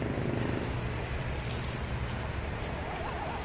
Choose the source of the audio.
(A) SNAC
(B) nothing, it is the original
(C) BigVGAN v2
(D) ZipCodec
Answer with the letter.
B